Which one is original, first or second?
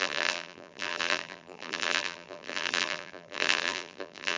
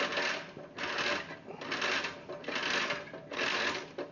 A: second